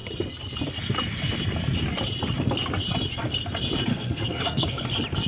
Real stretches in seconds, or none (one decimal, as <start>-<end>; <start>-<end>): 0.0-3.9; 4.8-5.3